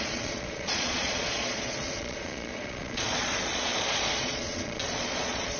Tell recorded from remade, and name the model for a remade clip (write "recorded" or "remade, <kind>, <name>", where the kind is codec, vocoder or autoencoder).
remade, vocoder, Vocos